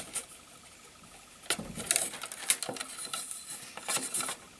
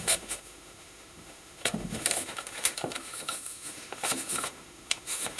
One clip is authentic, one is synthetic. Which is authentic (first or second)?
first